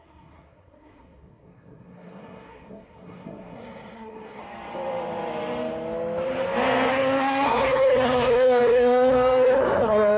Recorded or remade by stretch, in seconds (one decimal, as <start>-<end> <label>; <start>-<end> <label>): 0.0-4.4 remade; 4.4-6.9 recorded; 6.9-10.2 remade